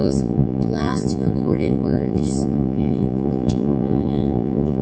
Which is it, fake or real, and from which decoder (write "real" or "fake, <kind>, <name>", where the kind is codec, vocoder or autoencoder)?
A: fake, vocoder, Vocos